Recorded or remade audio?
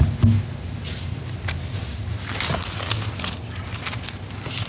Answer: recorded